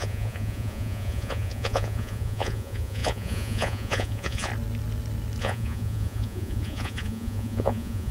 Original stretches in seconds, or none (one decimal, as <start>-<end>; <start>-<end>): 4.5-5.4